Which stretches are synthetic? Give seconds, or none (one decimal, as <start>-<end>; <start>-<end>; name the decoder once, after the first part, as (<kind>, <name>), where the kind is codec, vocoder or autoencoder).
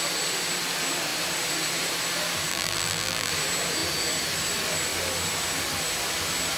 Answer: 2.5-3.3 (vocoder, BigVGAN v2)